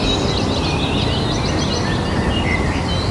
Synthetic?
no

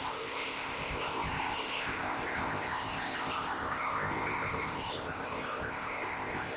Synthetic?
yes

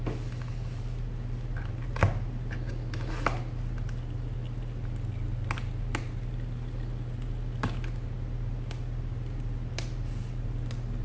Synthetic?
no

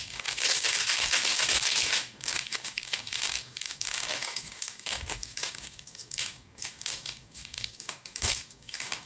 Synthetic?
yes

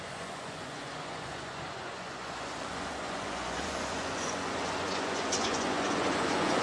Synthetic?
yes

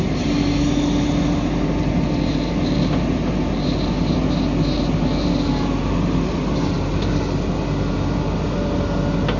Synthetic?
no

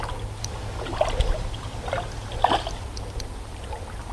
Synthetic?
no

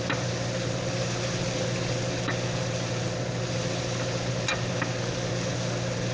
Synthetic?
no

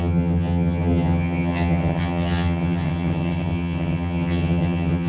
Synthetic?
yes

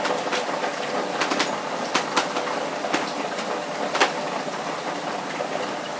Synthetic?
no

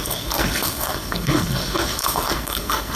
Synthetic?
yes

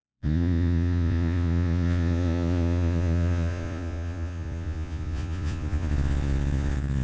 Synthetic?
yes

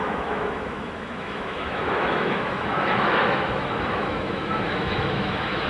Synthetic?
yes